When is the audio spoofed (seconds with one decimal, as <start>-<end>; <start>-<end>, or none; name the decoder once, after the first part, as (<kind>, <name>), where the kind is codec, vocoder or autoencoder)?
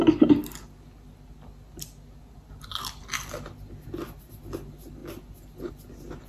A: none